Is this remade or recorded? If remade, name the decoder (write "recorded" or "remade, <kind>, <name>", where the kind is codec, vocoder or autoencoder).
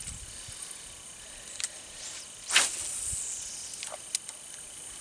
recorded